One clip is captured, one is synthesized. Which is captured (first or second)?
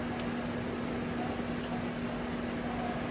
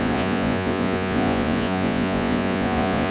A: first